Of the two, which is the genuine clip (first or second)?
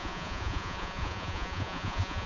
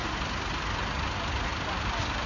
second